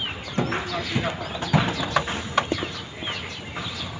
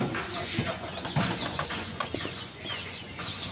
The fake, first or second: second